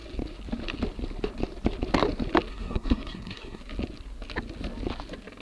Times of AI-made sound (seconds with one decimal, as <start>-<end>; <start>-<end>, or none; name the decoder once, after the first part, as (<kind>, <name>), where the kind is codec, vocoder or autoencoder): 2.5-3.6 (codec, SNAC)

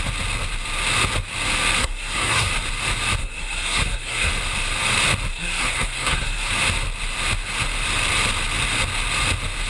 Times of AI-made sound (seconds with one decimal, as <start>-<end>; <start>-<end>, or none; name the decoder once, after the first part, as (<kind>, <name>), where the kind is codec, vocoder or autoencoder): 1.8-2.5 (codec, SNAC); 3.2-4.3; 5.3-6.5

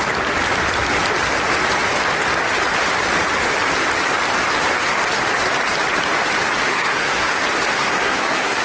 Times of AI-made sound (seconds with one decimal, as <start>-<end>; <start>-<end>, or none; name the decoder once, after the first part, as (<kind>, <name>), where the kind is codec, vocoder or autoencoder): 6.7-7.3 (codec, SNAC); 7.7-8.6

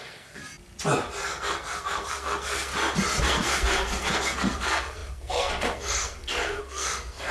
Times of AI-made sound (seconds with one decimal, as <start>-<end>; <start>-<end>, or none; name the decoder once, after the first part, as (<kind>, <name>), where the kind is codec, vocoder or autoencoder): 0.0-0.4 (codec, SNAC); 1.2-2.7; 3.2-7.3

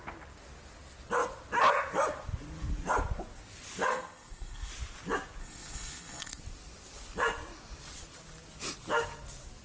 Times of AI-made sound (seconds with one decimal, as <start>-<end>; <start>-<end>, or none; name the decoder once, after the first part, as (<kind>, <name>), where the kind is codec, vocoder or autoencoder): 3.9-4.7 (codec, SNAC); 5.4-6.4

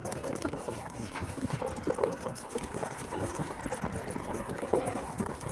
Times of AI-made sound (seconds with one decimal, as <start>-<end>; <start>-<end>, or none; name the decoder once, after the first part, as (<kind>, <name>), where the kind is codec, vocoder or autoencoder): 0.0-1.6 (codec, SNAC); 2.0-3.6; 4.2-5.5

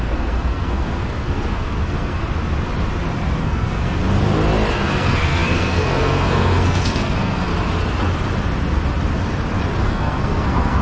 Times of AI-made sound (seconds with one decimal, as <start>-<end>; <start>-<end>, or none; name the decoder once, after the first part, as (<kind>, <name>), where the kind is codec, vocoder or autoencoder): 0.0-2.2 (codec, SNAC); 3.4-4.0; 4.7-7.5; 9.8-10.8